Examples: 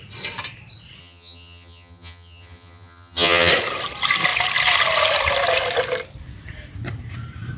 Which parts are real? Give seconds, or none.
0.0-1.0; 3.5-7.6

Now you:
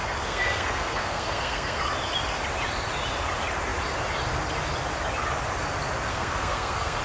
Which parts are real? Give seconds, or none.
1.8-6.1

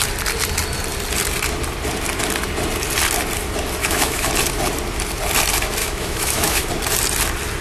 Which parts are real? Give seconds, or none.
0.0-3.8; 4.3-5.8; 6.7-7.6

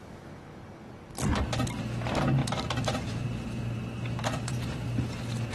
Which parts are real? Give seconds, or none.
0.0-2.4

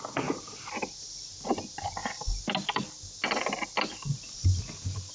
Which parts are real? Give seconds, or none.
0.0-5.1